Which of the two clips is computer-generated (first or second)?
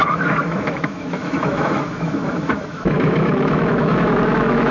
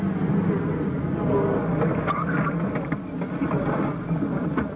first